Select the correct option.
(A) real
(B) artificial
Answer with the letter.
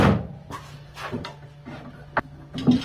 A